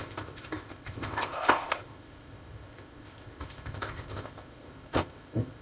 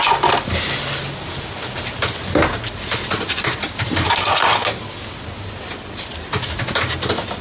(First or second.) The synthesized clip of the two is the first